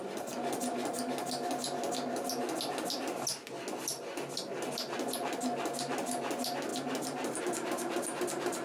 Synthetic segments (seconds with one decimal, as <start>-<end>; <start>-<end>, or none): none